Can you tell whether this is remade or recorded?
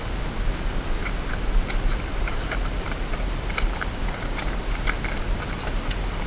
recorded